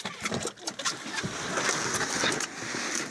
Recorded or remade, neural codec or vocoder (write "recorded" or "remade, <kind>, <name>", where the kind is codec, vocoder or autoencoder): recorded